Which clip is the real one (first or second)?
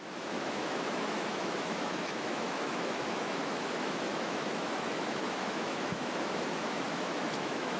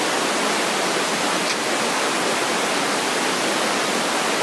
second